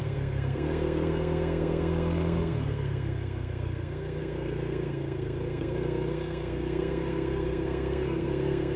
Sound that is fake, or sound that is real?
fake